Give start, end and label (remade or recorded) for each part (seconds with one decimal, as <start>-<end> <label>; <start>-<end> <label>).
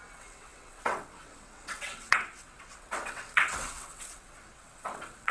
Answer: 0.0-5.3 remade